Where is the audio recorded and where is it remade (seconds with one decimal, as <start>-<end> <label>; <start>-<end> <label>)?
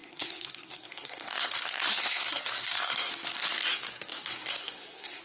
0.0-3.1 remade; 3.1-3.7 recorded; 3.7-5.2 remade